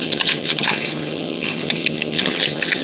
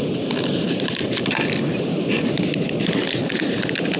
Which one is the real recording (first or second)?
second